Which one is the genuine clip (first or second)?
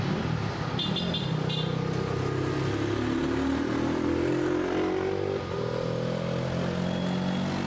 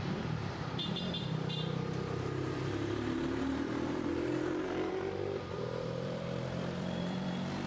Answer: first